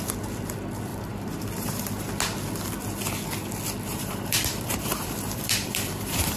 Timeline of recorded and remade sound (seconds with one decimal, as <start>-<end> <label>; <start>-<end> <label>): 0.0-0.9 recorded; 0.9-2.1 remade; 2.1-3.9 recorded; 3.9-6.4 remade